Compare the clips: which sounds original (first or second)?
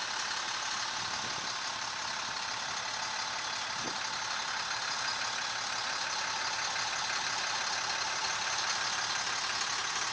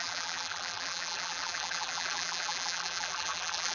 first